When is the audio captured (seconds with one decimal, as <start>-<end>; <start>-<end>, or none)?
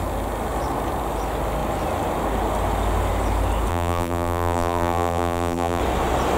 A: 0.0-3.7; 5.8-6.4